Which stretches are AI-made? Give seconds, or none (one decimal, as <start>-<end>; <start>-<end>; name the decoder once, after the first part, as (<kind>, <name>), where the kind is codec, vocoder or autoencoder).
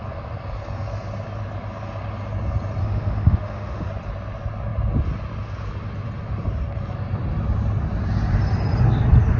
2.8-3.9 (autoencoder, DAC-VAE)